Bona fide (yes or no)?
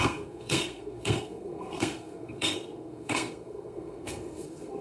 no